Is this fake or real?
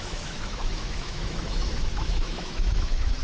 fake